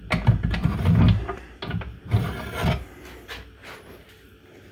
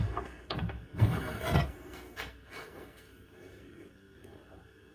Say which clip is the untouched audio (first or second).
first